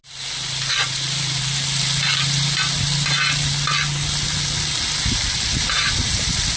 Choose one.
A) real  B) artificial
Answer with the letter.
A